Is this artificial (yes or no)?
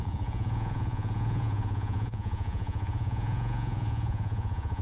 yes